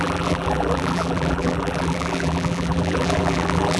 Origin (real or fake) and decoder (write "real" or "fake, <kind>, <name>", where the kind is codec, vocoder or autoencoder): fake, vocoder, BigVGAN v2